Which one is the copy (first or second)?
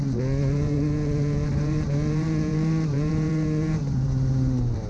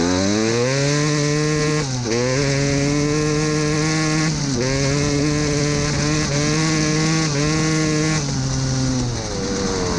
first